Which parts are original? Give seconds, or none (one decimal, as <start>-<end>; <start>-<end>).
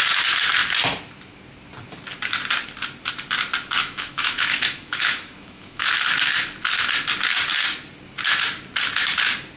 0.0-3.8; 5.9-9.6